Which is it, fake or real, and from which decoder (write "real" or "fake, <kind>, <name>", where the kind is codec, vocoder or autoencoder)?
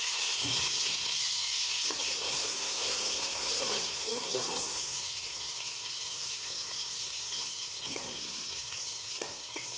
fake, codec, SNAC